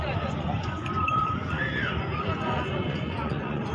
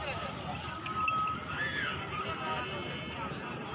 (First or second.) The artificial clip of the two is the first